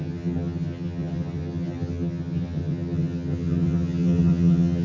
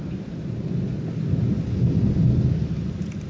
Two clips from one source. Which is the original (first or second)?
second